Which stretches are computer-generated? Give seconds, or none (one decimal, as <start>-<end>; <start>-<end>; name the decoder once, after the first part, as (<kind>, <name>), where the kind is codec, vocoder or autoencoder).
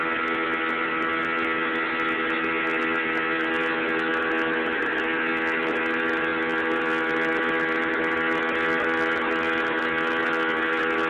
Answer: none